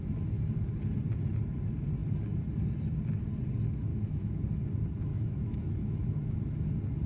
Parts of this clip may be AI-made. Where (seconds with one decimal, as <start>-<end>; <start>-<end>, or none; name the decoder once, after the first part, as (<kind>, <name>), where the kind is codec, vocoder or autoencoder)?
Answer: 3.9-4.4 (autoencoder, DAC-VAE); 5.1-6.5